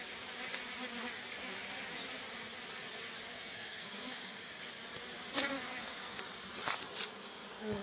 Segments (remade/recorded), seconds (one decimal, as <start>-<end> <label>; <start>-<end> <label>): 0.0-3.3 recorded; 3.3-4.6 remade; 4.6-5.7 recorded; 5.7-6.2 remade; 6.2-7.1 recorded; 7.1-7.8 remade

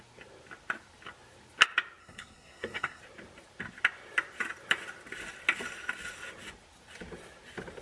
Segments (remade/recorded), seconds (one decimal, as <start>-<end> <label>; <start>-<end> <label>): 0.0-2.0 recorded; 2.0-3.0 remade; 3.0-7.8 recorded

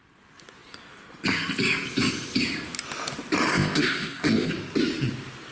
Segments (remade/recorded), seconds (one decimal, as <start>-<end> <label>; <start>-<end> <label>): 0.0-3.5 recorded; 3.5-4.5 remade; 4.5-5.5 recorded